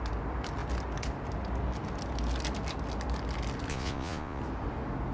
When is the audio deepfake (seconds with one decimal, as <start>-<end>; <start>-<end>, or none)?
3.7-4.4